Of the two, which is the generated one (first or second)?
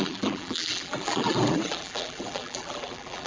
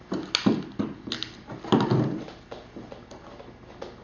first